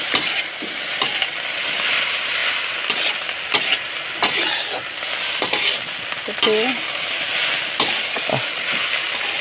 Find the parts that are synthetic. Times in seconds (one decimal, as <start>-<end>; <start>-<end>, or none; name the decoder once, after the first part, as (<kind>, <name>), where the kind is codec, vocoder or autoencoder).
none

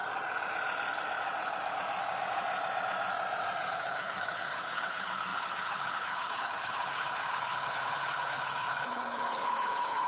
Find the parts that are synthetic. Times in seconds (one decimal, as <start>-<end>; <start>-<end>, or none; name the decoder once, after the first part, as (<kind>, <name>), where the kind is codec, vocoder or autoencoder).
3.7-10.1 (codec, HILCodec)

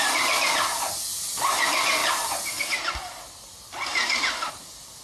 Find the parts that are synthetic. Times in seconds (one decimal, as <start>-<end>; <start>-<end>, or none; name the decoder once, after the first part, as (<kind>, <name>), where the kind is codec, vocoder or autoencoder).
none

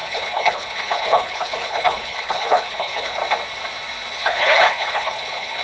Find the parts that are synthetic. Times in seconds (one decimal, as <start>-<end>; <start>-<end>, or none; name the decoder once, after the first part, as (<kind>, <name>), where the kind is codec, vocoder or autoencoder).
0.0-3.2 (codec, HILCodec); 4.1-5.6

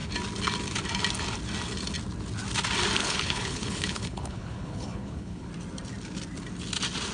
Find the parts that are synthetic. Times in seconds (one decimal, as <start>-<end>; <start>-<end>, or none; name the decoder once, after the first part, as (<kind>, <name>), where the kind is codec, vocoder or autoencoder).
3.0-5.5 (codec, HILCodec)